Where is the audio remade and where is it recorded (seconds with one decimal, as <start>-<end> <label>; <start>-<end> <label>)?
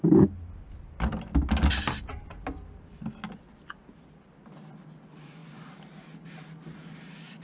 0.0-7.4 recorded